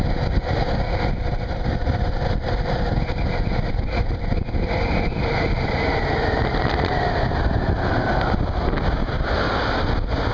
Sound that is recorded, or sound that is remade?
recorded